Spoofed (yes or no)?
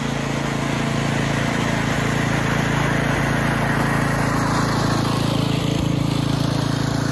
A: no